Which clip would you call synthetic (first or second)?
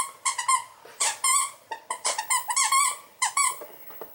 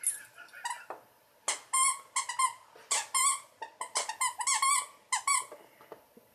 first